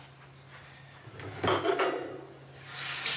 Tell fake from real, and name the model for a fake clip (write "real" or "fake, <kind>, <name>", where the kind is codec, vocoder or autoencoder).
real